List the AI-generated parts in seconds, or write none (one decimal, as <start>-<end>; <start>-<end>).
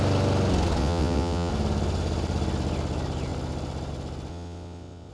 0.8-1.5; 4.3-5.1